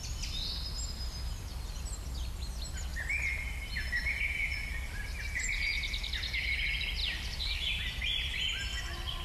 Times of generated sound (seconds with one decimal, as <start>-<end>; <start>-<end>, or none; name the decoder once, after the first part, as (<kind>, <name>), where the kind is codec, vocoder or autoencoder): 2.9-6.1 (vocoder, BigVGAN v2); 7.0-7.8